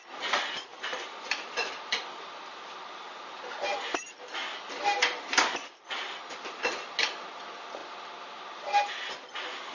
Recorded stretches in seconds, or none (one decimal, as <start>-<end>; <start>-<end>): 0.0-0.7; 3.5-9.7